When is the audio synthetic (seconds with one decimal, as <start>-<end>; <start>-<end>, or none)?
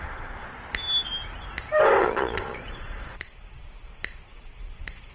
0.0-0.5; 2.0-5.1